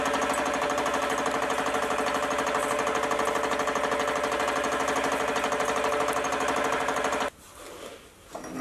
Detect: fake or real real